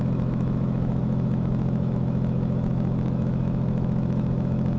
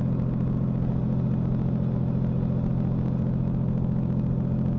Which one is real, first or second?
second